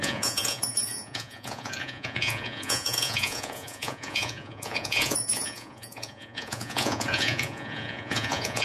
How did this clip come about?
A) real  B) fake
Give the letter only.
B